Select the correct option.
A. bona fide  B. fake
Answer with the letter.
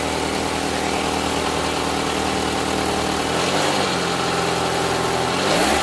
A